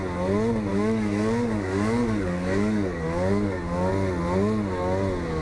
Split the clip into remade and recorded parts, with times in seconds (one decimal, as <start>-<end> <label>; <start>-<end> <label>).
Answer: 0.0-0.7 recorded; 0.7-3.9 remade; 3.9-5.4 recorded